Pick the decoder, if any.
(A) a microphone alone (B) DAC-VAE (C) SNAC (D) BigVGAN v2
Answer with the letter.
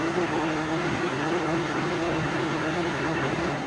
C